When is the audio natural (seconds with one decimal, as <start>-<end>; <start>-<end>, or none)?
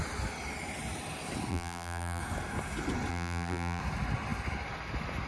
0.0-1.5; 2.2-3.1; 3.8-5.3